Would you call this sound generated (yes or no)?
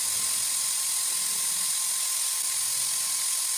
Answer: no